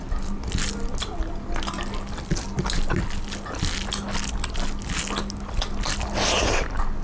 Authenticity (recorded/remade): recorded